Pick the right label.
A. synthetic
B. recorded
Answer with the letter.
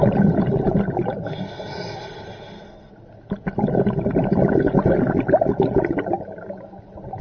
B